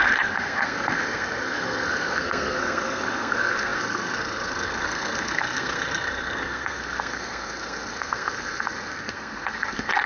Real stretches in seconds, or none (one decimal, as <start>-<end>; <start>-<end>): none